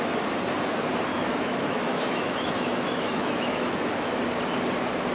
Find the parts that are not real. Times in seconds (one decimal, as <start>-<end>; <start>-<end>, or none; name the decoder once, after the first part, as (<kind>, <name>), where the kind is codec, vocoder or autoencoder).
1.1-4.2 (autoencoder, DAC-VAE)